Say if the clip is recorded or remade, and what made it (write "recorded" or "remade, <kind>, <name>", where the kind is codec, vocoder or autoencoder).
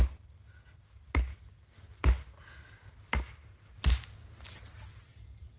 recorded